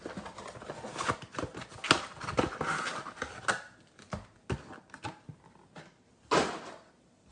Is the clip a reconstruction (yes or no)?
no